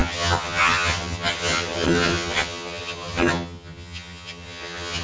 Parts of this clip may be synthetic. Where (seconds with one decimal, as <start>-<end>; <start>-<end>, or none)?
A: 0.0-5.0